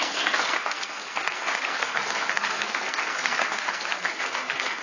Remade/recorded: remade